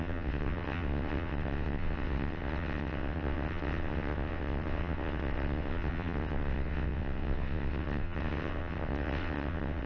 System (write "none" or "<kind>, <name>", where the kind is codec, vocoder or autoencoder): vocoder, WaveNeXt